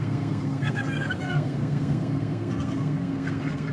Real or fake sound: fake